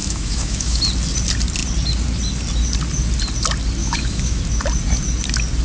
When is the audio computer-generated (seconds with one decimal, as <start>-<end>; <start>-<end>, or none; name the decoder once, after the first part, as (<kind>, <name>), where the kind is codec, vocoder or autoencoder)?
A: 0.0-0.8 (autoencoder, DAC-VAE); 3.8-4.4